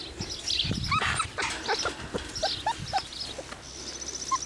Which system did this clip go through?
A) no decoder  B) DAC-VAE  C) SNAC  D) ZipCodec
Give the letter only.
A